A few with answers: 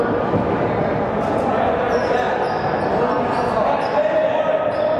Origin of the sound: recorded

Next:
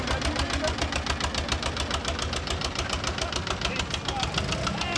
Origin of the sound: recorded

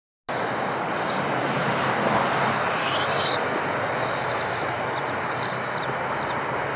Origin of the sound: recorded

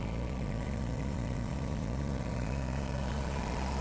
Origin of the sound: remade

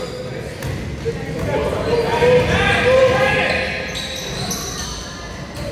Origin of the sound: recorded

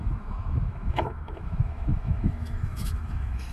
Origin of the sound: remade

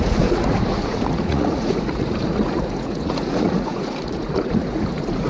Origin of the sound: remade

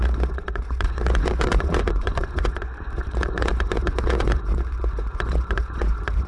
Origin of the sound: remade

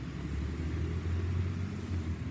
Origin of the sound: recorded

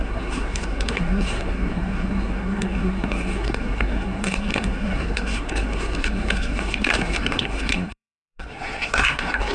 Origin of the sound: remade